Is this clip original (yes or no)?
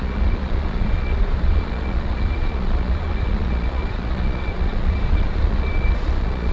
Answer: no